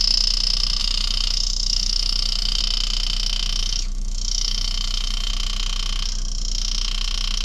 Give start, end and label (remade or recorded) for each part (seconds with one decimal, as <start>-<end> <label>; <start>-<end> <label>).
0.0-0.8 recorded; 0.8-2.6 remade; 2.6-3.6 recorded; 3.6-5.3 remade; 5.3-7.4 recorded